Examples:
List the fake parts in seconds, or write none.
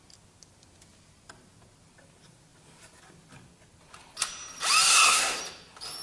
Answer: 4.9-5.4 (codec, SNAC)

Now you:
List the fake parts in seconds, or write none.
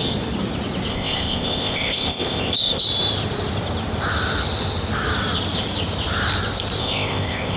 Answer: 0.9-2.8 (codec, ZipCodec); 6.8-7.6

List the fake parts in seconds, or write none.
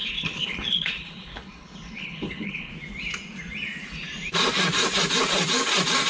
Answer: 0.0-2.7 (codec, HILCodec)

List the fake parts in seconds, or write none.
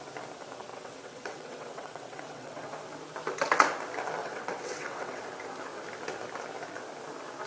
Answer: 0.7-2.7 (vocoder, WaveNeXt); 4.2-5.2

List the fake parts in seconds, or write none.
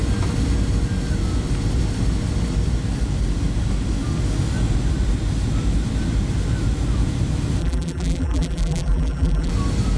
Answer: 7.6-9.5 (vocoder, BigVGAN v2)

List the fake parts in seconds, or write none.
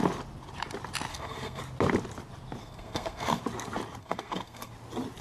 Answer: 1.1-1.6 (codec, SNAC); 2.6-3.4; 4.0-4.7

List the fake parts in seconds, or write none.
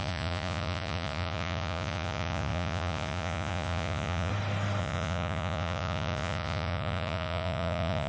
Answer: 0.0-4.3 (vocoder, Vocos); 4.8-8.1